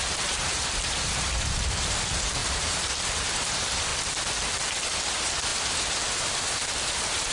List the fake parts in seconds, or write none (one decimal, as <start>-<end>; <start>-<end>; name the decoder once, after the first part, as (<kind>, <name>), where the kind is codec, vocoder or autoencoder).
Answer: 0.0-3.9 (vocoder, BigVGAN v2); 5.1-7.3